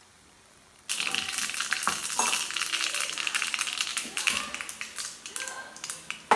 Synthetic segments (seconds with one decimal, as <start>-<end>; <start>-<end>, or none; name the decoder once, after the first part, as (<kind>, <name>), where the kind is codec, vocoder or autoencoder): 3.9-4.4 (autoencoder, DAC-VAE)